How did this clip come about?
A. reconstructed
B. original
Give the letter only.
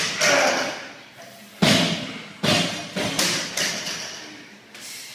B